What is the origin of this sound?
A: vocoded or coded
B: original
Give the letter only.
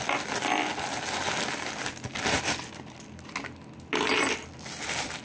B